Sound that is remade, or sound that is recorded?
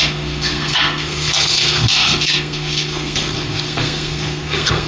remade